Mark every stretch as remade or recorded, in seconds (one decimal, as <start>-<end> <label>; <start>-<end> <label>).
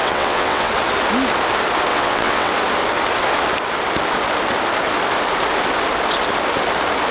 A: 0.0-0.7 remade; 0.7-1.9 recorded; 1.9-2.5 remade; 2.5-7.1 recorded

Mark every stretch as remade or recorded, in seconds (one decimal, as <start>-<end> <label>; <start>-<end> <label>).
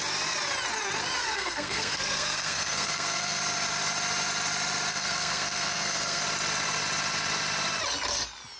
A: 0.0-1.2 recorded; 1.2-3.4 remade; 3.4-4.9 recorded; 4.9-6.2 remade; 6.2-8.6 recorded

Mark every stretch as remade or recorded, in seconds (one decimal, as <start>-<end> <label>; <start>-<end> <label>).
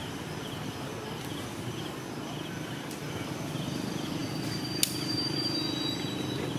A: 0.0-6.6 recorded